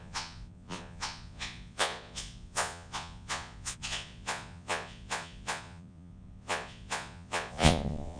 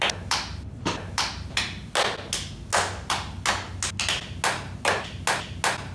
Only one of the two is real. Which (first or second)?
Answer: second